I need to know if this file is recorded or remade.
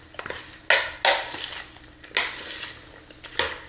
recorded